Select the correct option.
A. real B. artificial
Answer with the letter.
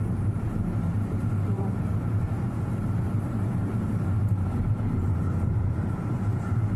B